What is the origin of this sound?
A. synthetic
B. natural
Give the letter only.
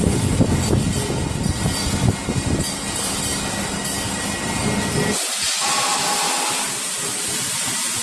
B